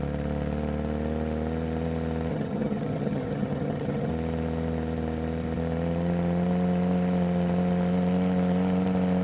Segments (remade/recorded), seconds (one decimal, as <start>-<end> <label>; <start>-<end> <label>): 0.0-2.3 recorded; 2.3-4.1 remade; 4.1-9.2 recorded